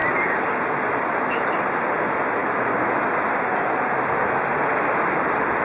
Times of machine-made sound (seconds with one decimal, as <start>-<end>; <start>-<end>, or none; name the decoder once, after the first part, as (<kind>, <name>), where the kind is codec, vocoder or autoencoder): 2.4-3.0 (autoencoder, DAC-VAE)